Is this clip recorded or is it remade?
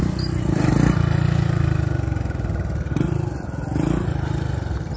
recorded